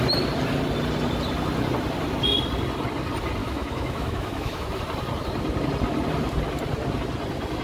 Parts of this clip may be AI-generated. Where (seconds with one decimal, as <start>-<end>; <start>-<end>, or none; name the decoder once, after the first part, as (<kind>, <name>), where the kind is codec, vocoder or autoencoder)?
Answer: 3.4-4.8 (autoencoder, DAC-VAE)

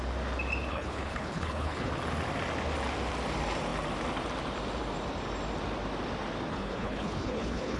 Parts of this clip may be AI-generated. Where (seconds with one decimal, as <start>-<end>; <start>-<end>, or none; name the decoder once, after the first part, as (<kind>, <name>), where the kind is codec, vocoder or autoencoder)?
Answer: 0.7-1.9 (codec, HILCodec); 6.5-7.8

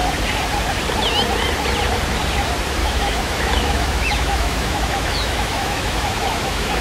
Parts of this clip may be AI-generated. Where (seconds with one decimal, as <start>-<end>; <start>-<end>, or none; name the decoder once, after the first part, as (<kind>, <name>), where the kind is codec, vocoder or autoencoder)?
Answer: 2.8-6.8 (autoencoder, DAC-VAE)